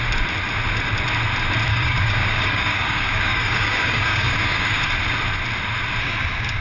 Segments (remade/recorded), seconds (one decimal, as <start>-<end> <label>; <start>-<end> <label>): 0.0-1.7 recorded; 1.7-4.8 remade; 4.8-6.6 recorded